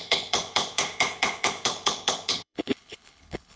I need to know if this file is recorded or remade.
remade